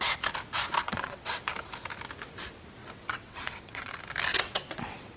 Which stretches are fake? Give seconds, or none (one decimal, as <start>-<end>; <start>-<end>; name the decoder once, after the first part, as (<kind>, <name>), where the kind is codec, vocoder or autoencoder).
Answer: 0.8-1.5 (vocoder, WaveNeXt); 2.8-3.9; 4.3-5.2